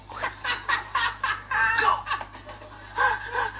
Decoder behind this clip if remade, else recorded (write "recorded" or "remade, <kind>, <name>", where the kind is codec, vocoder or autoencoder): recorded